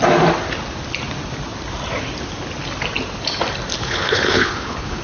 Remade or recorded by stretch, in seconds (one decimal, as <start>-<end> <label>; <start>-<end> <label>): 0.0-3.8 recorded; 3.8-5.0 remade